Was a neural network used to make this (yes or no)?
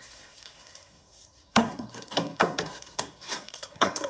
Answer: yes